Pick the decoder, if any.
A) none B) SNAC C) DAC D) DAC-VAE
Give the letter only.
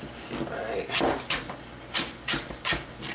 A